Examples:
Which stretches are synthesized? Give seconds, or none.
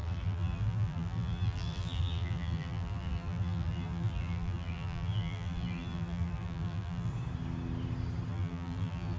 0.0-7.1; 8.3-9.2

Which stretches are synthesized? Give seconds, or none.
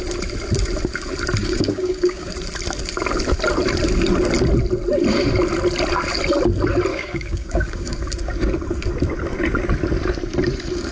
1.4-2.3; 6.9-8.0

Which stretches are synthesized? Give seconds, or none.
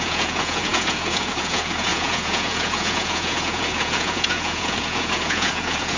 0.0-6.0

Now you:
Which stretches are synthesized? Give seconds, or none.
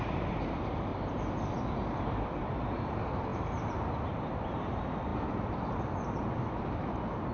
0.0-0.9; 2.4-7.3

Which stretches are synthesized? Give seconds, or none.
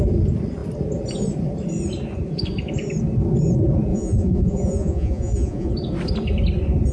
3.9-5.7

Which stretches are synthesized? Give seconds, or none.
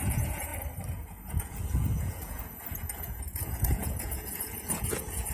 0.0-0.5; 1.3-5.3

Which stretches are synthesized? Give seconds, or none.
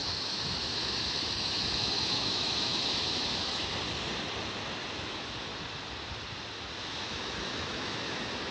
0.0-3.7; 4.9-5.5; 6.8-8.5